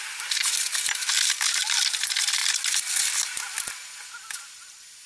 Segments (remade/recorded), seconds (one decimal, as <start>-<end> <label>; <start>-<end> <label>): 0.0-5.1 recorded